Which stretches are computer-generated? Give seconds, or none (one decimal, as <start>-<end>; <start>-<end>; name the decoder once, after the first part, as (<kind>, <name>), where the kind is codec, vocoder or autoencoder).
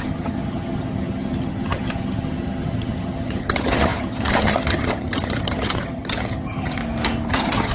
0.0-6.8 (vocoder, HiFi-GAN); 7.3-7.7